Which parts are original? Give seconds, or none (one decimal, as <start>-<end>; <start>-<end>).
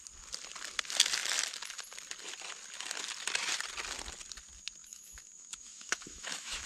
0.0-4.8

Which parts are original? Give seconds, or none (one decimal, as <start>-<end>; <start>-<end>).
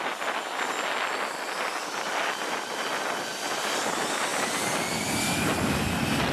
0.0-6.3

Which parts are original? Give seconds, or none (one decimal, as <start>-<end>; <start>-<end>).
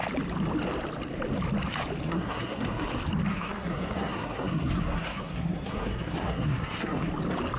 0.0-2.0; 2.9-3.3; 7.1-7.6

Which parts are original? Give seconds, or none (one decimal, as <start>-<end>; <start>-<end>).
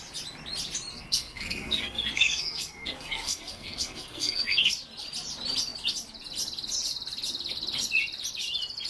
0.0-0.9; 4.7-8.9